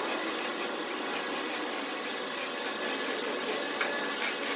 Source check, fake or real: real